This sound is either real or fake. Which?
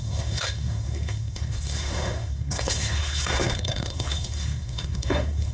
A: fake